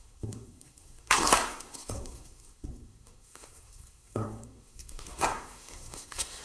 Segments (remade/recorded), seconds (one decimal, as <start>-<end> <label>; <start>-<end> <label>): 0.0-6.4 remade